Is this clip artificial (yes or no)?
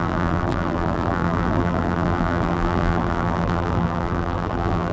yes